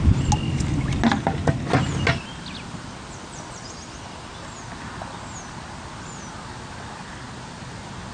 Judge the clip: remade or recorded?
recorded